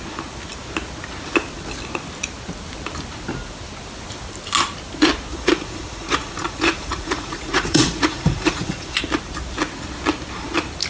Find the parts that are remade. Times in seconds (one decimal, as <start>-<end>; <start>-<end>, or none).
5.3-9.0